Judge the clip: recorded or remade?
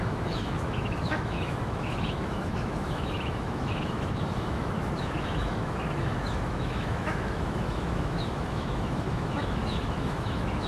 remade